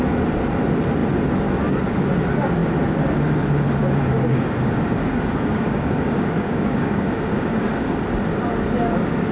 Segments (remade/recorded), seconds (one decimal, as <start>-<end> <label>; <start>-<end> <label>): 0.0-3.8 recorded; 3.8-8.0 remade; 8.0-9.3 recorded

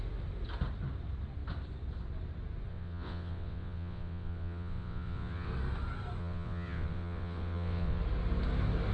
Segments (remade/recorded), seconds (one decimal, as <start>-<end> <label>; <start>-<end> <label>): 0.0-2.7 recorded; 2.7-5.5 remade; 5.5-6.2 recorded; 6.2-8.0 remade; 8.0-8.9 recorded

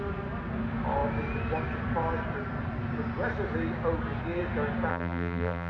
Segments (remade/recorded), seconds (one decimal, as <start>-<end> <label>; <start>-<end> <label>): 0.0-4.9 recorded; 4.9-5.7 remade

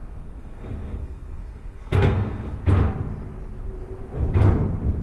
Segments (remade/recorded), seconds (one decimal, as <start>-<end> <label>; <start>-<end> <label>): 0.0-2.6 remade; 2.6-5.0 recorded

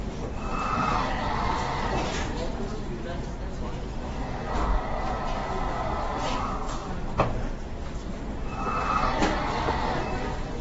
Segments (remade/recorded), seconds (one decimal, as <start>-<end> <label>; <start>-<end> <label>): 0.0-0.5 recorded; 0.5-2.4 remade; 2.4-6.8 recorded; 6.8-7.5 remade; 7.5-10.6 recorded

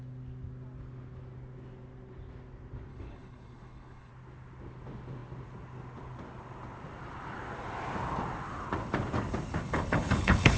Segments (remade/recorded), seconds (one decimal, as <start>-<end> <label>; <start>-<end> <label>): 0.0-2.9 recorded; 2.9-4.1 remade; 4.1-9.6 recorded; 9.6-10.6 remade